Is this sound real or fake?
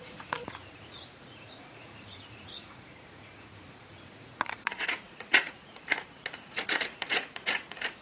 fake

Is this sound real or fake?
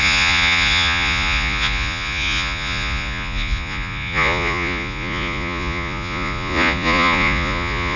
fake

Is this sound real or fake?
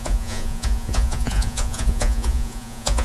fake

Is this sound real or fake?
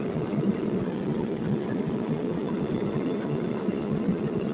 fake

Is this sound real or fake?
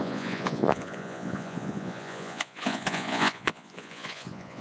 fake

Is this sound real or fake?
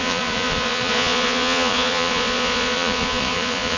fake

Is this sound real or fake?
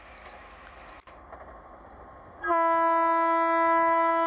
real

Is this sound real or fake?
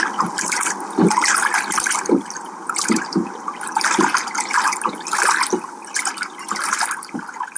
real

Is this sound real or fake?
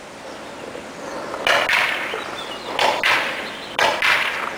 real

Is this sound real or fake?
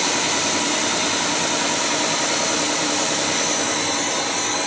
real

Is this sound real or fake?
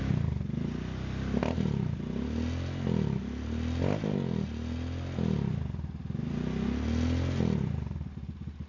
real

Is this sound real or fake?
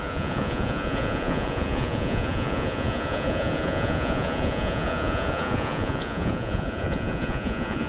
fake